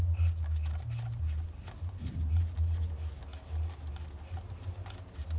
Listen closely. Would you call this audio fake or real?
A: real